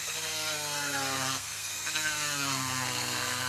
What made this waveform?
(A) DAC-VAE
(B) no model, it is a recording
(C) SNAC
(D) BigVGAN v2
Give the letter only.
C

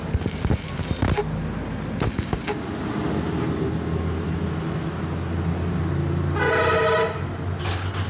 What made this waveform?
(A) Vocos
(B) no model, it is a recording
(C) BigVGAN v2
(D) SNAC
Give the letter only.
B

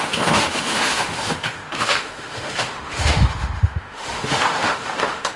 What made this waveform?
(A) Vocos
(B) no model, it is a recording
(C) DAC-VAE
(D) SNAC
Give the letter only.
C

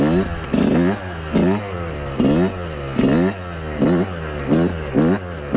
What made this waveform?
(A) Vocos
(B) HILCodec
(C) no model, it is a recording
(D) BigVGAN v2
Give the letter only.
C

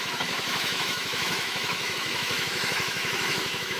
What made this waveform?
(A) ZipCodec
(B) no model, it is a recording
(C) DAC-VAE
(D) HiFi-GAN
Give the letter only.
C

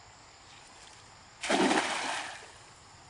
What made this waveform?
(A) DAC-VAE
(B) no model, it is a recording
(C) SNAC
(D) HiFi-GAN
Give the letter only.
B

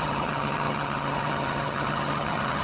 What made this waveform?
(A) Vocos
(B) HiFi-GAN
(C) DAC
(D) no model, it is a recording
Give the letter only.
B